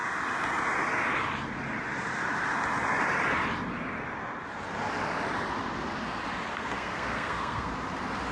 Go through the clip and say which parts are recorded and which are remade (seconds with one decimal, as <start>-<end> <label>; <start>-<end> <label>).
0.0-6.5 recorded; 6.5-7.7 remade; 7.7-8.3 recorded